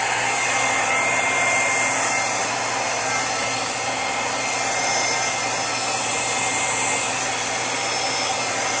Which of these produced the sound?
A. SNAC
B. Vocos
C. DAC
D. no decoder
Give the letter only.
D